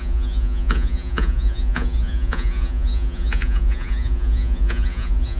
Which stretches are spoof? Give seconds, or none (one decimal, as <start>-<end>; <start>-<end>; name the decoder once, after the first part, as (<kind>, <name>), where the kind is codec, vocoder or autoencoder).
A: 0.0-5.4 (vocoder, Vocos)